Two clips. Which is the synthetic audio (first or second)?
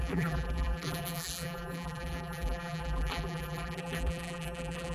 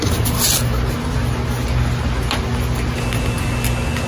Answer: first